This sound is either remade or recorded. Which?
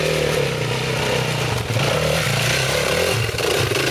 recorded